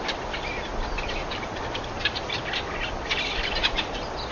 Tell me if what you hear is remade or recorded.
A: recorded